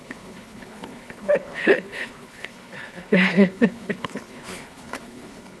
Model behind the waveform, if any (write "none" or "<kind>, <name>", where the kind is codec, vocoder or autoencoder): codec, HILCodec